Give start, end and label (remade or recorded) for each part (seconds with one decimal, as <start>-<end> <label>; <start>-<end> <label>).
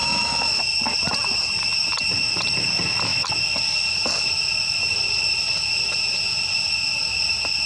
0.0-0.6 remade; 0.6-7.7 recorded